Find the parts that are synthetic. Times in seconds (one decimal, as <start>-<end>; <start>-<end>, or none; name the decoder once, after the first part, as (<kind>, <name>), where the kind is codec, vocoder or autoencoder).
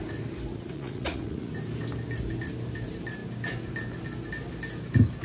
0.5-1.5 (vocoder, Vocos)